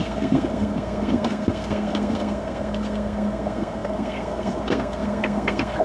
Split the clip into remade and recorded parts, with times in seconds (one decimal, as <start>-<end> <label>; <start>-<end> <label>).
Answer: 0.0-5.8 remade